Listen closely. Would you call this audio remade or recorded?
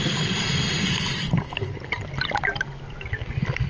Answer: recorded